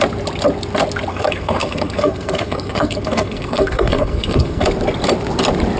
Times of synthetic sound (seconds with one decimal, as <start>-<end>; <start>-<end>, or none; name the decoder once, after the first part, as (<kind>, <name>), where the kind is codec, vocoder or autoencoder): 1.1-4.6 (codec, SNAC)